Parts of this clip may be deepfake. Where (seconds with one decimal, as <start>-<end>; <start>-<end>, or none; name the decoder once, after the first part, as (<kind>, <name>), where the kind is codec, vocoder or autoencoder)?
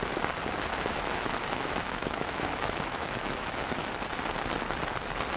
0.7-3.9 (autoencoder, DAC-VAE)